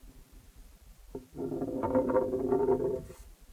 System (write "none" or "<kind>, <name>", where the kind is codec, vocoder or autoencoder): none